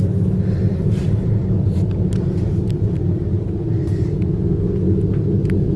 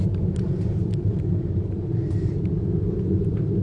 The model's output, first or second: second